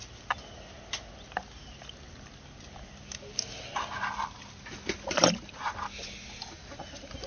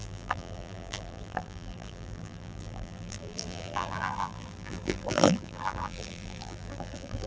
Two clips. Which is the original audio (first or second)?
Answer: first